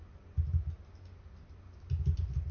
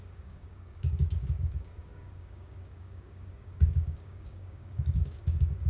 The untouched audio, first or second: first